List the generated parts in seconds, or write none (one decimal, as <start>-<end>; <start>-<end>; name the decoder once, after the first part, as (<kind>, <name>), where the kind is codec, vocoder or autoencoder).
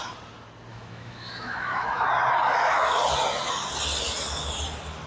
0.7-2.0 (autoencoder, DAC-VAE)